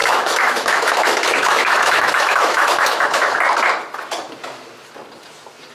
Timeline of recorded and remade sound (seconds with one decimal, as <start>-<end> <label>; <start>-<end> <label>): 0.0-3.4 remade; 3.4-5.7 recorded